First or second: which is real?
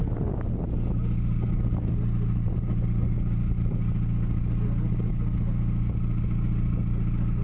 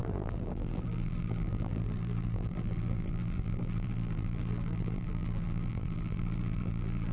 first